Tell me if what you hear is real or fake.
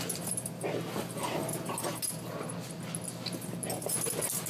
real